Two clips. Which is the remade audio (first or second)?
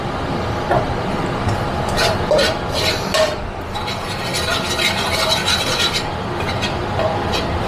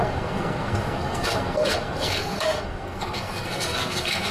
second